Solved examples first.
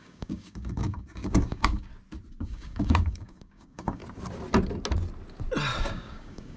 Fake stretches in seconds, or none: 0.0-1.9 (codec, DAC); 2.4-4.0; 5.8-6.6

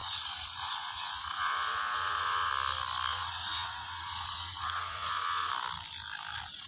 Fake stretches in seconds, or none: 0.0-2.5 (vocoder, Vocos); 3.1-5.5

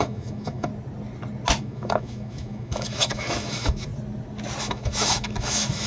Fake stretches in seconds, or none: 0.0-0.7 (autoencoder, DAC-VAE); 1.6-3.9; 4.6-5.9

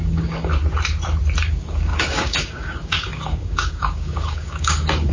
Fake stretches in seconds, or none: 0.0-0.5 (codec, DAC); 1.4-5.1

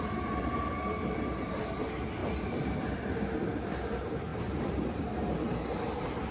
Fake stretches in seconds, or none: 2.2-3.0 (vocoder, BigVGAN v2)

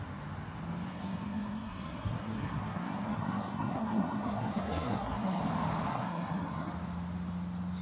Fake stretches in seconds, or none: 0.9-5.4 (codec, SNAC); 5.9-6.7

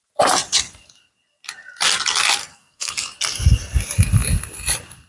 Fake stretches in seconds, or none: 2.4-2.9 (codec, SNAC)